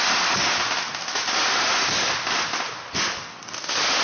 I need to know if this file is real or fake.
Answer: real